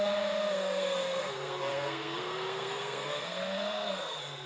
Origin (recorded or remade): remade